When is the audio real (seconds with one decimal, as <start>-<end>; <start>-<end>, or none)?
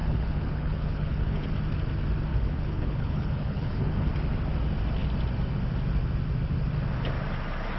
1.5-2.3; 4.1-7.8